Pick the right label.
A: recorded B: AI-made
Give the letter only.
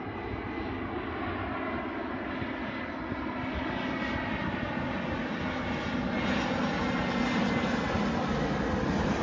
A